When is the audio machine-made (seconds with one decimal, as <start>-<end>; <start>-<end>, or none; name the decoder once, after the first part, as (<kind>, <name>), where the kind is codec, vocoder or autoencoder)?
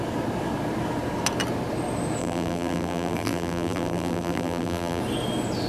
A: 2.2-5.0 (vocoder, BigVGAN v2)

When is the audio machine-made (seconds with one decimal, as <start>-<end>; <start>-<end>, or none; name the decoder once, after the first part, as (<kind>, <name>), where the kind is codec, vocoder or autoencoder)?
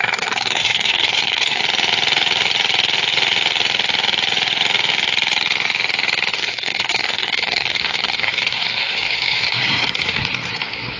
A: 0.0-1.6 (codec, SNAC); 6.3-11.0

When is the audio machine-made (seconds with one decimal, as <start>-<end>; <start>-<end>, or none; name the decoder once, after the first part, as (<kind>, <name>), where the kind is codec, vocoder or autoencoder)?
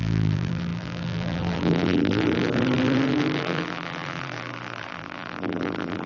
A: 0.0-6.1 (vocoder, BigVGAN v2)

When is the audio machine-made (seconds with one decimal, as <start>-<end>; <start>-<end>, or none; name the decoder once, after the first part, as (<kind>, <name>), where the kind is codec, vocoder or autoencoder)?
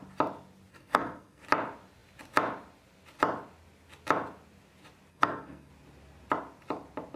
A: 0.7-1.4 (codec, SNAC); 5.1-5.7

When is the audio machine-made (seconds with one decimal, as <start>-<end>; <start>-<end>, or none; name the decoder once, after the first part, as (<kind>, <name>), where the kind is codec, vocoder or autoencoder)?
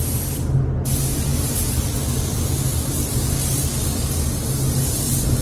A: none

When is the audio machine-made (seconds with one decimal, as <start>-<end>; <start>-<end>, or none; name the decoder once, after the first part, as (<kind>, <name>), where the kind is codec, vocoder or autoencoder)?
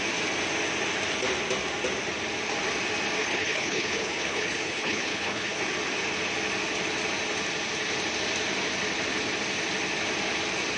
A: 3.2-5.6 (codec, HILCodec)